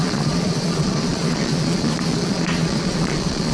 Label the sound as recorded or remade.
remade